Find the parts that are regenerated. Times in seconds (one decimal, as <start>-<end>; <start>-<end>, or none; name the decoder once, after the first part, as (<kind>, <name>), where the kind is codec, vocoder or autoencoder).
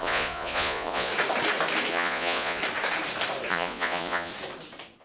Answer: 0.0-1.1 (vocoder, Vocos); 1.9-2.6; 3.5-4.3